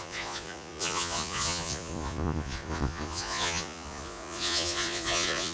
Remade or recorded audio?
remade